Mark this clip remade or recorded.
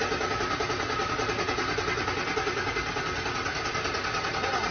recorded